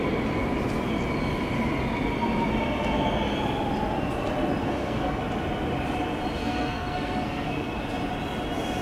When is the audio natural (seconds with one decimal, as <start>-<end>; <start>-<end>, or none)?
0.0-4.6; 5.2-6.4; 7.8-8.8